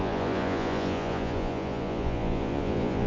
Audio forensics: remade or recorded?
remade